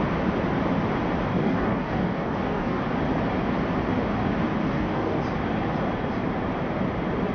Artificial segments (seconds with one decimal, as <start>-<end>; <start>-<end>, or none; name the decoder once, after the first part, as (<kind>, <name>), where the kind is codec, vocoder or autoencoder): 1.3-2.8 (codec, DAC); 4.6-5.2

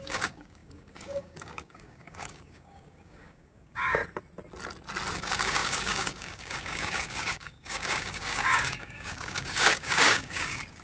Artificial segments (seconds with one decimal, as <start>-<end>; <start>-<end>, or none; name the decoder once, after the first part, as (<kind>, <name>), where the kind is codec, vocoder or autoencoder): 0.0-4.0 (codec, DAC); 5.1-10.8

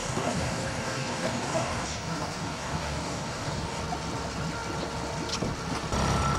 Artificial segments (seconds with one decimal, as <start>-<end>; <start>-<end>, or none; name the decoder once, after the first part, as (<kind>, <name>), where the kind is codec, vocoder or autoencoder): 0.0-3.8 (codec, DAC)

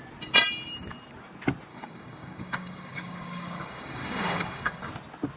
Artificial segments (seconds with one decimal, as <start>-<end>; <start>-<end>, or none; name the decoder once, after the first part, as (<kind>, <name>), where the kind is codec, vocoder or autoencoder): 1.7-4.9 (codec, DAC)

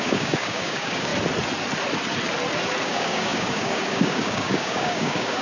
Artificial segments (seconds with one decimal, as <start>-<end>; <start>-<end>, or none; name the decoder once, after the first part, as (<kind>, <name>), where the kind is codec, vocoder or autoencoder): 0.0-1.1 (codec, DAC); 2.8-5.4